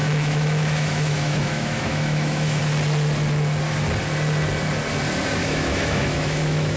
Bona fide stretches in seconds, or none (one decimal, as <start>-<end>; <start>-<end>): 2.6-5.4